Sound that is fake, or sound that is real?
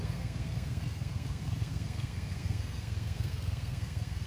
fake